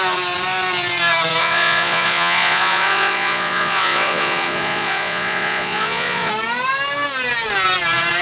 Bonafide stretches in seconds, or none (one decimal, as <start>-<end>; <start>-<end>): 0.0-1.4; 6.3-8.2